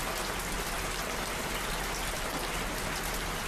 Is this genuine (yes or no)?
yes